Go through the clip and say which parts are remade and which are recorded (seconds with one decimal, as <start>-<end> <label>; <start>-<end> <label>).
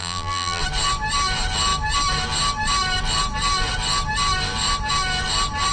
0.0-0.6 remade; 0.6-5.7 recorded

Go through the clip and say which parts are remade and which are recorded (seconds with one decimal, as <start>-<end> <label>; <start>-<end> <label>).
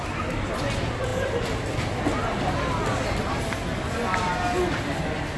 0.0-5.4 recorded